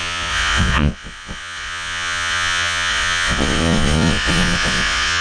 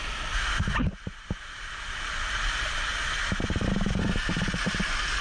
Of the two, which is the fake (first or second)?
first